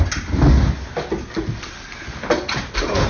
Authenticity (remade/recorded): recorded